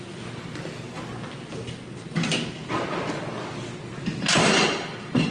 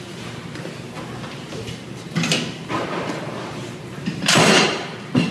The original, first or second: first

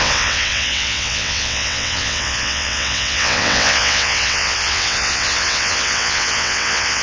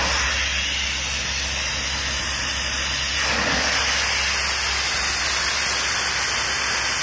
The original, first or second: second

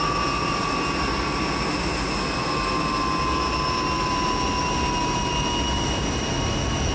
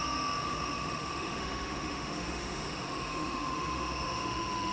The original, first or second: first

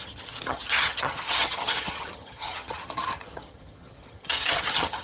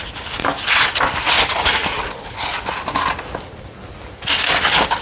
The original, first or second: second